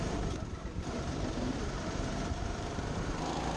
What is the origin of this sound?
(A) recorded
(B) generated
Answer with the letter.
B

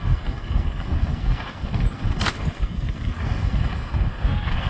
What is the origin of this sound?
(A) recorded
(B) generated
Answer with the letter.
B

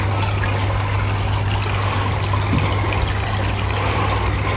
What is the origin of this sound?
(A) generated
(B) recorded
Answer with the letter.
B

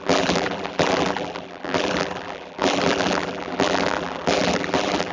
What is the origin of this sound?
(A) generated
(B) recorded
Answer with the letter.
A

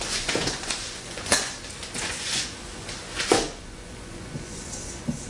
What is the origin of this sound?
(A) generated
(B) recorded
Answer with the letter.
A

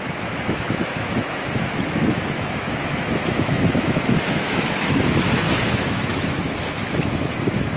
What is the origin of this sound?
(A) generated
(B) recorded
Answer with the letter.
A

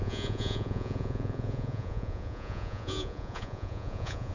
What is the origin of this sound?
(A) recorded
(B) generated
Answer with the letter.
B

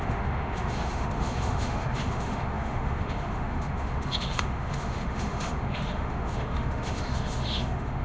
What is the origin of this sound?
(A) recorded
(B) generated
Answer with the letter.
B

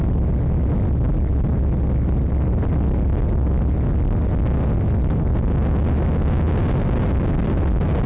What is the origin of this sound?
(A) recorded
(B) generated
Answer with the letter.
A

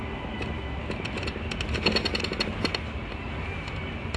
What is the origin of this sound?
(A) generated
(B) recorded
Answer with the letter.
B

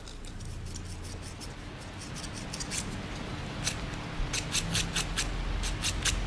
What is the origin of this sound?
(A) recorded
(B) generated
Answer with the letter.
A